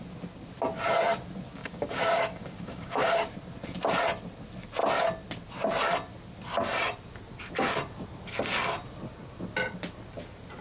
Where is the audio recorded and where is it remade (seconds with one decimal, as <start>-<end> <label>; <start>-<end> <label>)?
0.0-1.6 recorded; 1.6-3.3 remade; 3.3-10.6 recorded